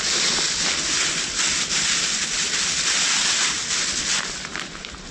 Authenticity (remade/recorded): recorded